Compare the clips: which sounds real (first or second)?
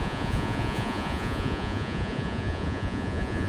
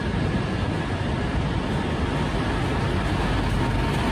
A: second